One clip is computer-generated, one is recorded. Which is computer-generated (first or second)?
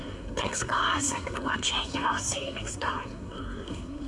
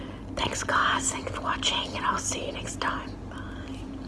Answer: first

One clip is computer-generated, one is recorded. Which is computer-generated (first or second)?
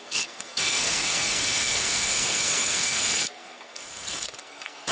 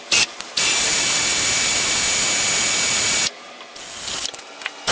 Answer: first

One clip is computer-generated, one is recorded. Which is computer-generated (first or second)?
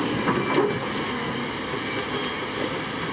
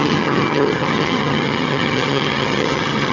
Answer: second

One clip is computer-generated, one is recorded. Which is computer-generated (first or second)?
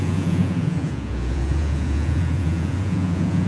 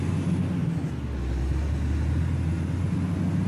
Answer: first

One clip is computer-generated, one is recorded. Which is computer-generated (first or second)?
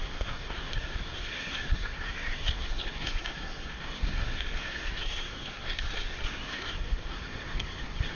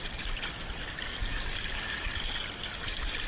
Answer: first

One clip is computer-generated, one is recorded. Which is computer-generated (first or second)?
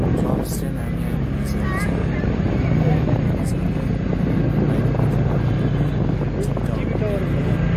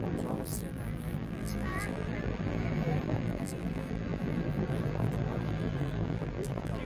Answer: second